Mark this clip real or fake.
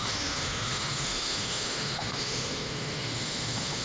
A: fake